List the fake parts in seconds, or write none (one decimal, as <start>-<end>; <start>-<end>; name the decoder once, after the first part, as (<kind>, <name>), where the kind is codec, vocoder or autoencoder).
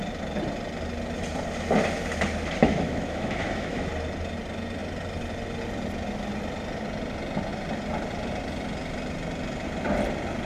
2.6-3.9 (autoencoder, DAC-VAE)